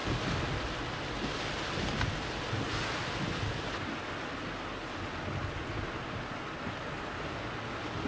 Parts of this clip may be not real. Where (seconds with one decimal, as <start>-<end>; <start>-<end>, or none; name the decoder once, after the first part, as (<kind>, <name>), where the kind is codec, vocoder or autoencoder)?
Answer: none